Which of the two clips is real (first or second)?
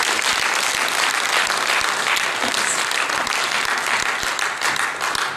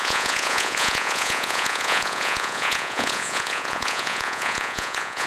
first